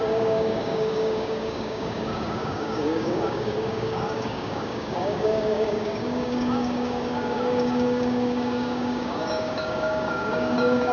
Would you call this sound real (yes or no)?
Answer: no